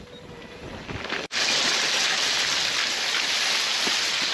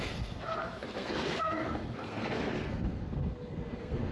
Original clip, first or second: first